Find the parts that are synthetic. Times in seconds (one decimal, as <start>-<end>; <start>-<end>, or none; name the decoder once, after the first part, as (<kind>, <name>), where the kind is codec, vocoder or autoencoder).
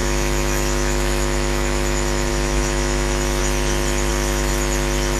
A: 0.0-3.4 (autoencoder, DAC-VAE); 4.1-4.5